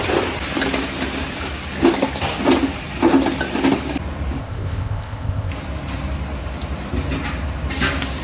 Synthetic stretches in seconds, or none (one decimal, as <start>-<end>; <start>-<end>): 4.4-5.5